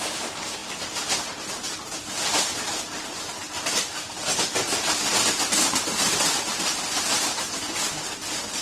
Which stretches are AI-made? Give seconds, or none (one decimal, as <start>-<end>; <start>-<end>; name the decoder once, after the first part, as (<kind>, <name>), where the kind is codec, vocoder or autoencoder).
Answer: 0.0-0.6 (vocoder, BigVGAN v2); 1.4-8.6